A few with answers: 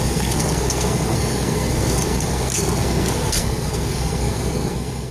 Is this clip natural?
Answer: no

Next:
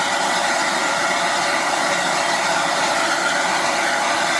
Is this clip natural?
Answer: yes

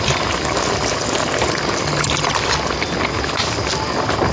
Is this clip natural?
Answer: yes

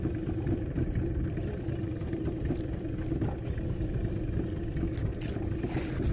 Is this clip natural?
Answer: yes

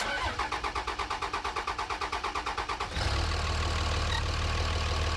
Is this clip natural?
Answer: yes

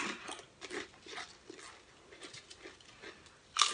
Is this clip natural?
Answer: yes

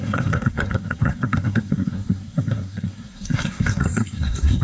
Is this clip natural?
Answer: no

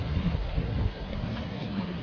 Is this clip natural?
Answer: no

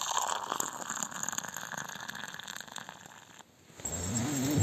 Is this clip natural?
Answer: yes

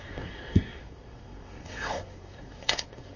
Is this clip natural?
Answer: no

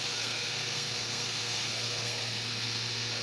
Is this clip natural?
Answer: no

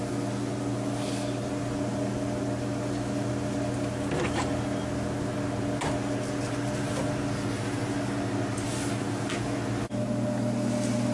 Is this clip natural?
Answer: yes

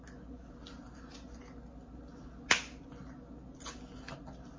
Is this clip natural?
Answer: yes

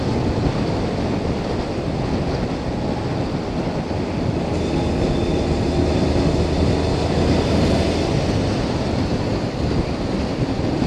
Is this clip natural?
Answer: yes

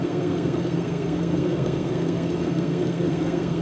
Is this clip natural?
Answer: no